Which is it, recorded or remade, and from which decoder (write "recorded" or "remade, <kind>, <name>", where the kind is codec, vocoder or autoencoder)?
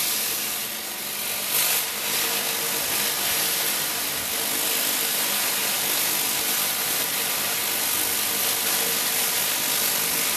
recorded